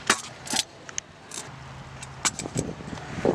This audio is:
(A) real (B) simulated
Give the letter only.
A